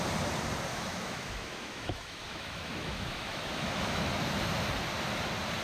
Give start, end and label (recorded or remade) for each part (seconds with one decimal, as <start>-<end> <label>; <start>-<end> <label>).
0.0-0.7 recorded; 0.7-4.1 remade; 4.1-5.6 recorded